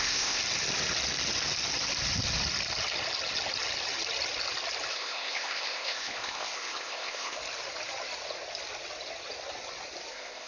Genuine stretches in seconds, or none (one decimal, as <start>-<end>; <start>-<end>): 0.4-4.9; 7.4-10.1